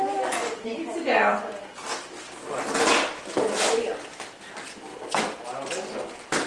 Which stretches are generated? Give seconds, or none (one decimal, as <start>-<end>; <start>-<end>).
none